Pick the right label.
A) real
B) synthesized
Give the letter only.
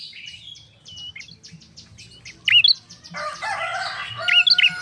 A